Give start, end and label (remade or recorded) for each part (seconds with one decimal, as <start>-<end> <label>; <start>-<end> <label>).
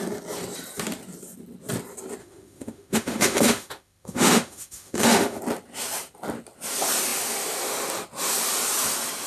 0.0-2.2 recorded; 2.2-5.4 remade; 5.4-9.3 recorded